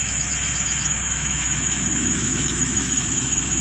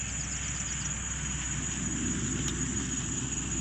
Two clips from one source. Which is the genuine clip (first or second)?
second